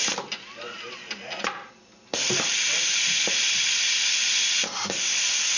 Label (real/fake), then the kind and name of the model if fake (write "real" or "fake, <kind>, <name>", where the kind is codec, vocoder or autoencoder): real